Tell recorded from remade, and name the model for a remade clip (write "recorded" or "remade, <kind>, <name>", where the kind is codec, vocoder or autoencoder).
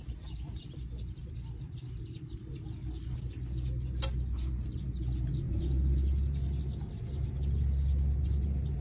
recorded